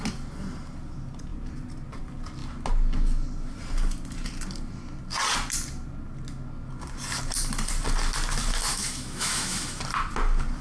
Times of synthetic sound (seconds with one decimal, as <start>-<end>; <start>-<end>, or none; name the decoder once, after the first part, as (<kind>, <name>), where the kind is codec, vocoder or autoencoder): 8.7-9.8 (autoencoder, DAC-VAE)

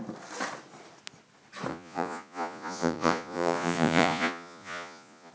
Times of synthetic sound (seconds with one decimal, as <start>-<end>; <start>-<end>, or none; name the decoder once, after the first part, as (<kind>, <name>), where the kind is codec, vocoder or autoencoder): 1.7-5.3 (vocoder, Vocos)

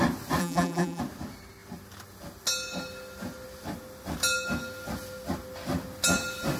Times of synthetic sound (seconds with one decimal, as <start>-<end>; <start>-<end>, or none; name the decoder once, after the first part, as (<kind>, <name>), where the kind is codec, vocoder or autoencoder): 0.4-1.0 (vocoder, BigVGAN v2)

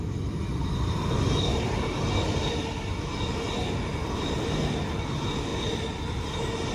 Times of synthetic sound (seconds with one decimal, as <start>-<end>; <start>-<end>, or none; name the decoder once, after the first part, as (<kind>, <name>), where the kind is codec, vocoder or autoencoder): 0.6-1.1 (vocoder, BigVGAN v2)